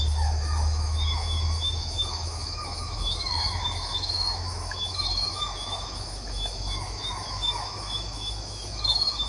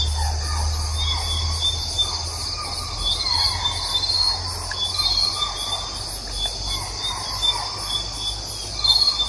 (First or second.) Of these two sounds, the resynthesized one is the first